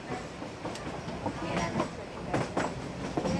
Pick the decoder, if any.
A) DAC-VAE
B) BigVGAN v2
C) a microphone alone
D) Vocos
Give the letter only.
C